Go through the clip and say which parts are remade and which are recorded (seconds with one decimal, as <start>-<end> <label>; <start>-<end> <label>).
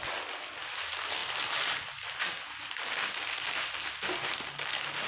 0.0-5.1 recorded